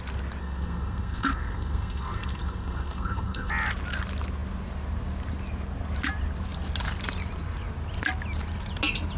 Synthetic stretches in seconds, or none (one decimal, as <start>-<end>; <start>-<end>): 0.4-3.5